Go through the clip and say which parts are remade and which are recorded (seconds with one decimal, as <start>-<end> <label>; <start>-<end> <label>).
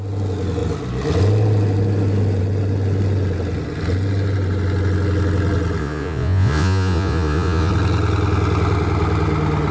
0.0-5.8 recorded; 5.8-7.7 remade; 7.7-9.7 recorded